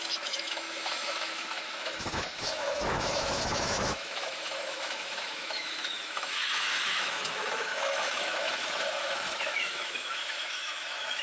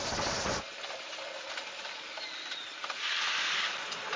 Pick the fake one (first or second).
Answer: first